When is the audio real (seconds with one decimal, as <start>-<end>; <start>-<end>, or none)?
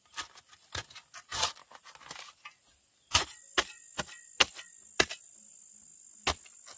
0.0-6.8